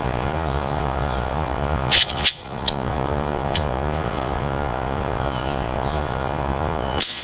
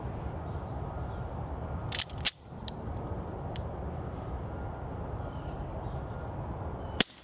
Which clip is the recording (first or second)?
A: second